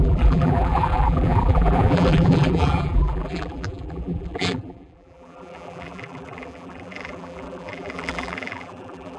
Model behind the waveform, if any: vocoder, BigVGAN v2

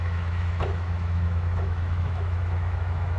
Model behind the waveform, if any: autoencoder, DAC-VAE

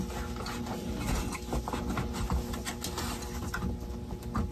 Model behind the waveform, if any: none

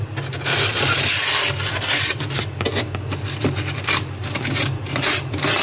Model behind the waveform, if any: none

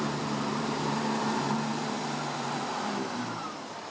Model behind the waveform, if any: vocoder, BigVGAN v2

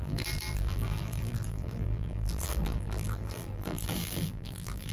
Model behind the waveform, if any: vocoder, BigVGAN v2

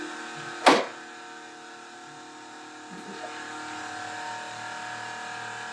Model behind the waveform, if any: none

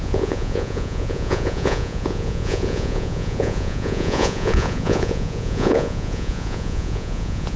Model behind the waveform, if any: vocoder, Vocos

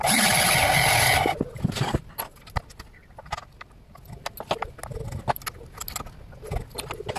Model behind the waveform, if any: none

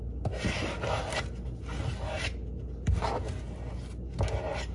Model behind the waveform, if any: none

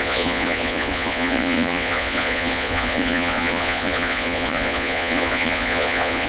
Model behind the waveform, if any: vocoder, Vocos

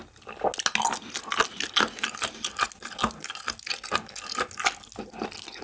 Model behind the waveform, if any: none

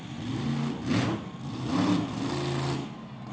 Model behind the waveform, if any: none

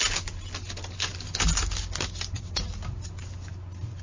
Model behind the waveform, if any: none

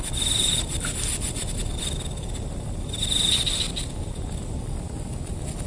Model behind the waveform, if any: none